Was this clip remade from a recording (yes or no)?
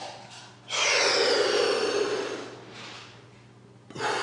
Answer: no